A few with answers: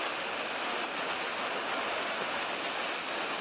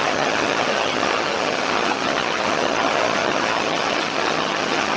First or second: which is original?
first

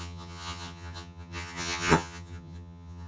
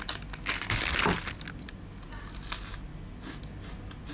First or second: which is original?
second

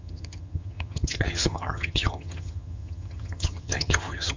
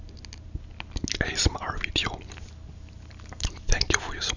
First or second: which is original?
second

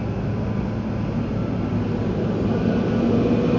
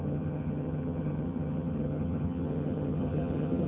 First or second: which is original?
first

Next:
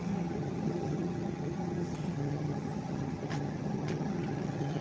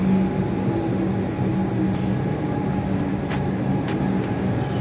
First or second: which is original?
second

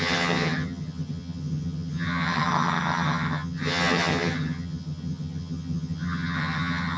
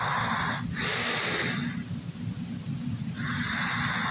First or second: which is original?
second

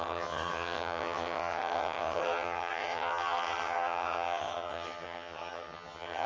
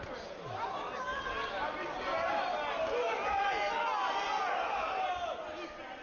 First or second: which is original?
second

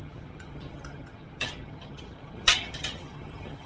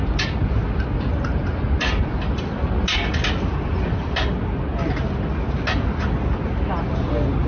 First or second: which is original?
second